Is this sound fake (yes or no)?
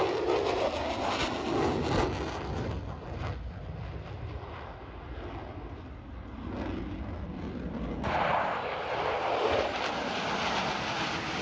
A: no